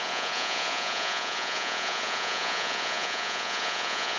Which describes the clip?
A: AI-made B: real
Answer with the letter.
A